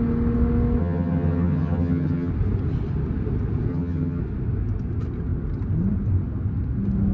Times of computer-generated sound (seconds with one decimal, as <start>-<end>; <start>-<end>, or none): 0.8-2.3; 3.7-4.2